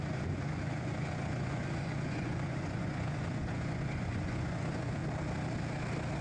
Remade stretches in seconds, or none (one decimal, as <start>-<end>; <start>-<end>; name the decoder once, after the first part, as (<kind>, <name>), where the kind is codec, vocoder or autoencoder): 0.0-5.0 (vocoder, Vocos)